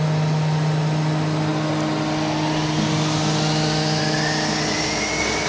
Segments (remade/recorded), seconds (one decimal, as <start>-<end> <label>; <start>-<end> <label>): 0.0-5.5 recorded